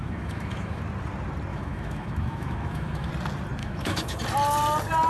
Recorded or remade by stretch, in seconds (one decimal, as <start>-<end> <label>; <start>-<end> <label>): 0.0-0.8 remade; 0.8-1.5 recorded; 1.5-3.1 remade; 3.1-3.6 recorded; 3.6-4.2 remade; 4.2-5.1 recorded